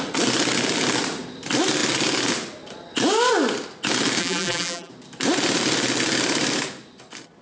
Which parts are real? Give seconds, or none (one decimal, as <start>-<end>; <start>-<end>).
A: 0.0-4.2; 4.9-7.4